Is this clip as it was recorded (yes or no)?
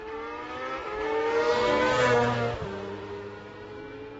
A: yes